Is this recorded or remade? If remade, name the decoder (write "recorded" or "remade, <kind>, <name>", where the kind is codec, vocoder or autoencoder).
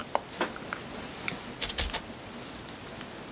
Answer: recorded